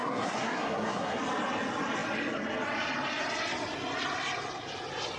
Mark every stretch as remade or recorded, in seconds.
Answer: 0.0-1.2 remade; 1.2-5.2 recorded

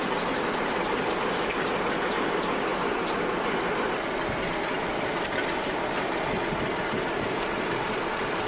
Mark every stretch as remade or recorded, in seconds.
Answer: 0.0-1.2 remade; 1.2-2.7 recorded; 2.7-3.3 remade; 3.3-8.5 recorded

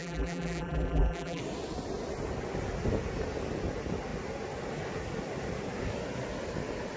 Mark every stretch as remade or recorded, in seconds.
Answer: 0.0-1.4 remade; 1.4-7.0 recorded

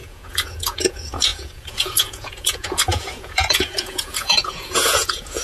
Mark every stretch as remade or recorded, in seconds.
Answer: 0.0-5.4 remade